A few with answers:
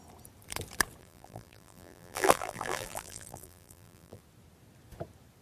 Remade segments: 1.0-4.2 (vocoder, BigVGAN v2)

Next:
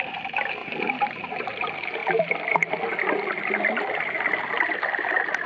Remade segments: 0.6-1.5 (vocoder, BigVGAN v2)

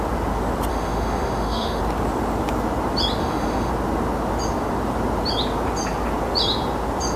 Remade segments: 0.7-1.8 (autoencoder, DAC-VAE); 3.2-3.7

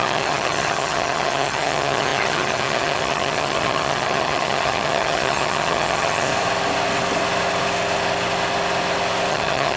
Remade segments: 0.0-6.3 (vocoder, HiFi-GAN); 9.3-9.8

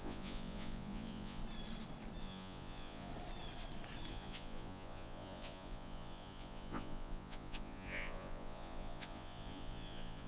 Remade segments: 0.0-1.4 (vocoder, Vocos); 2.2-3.1; 4.1-10.3

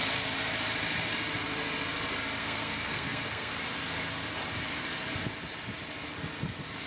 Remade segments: 2.4-3.5 (codec, SNAC)